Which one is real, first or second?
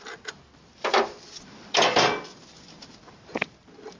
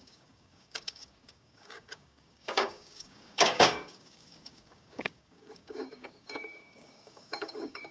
first